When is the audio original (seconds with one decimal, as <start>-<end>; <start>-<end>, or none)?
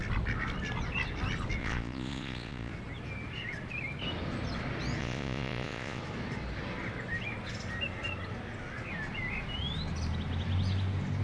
0.0-1.6; 2.7-5.0; 6.0-11.2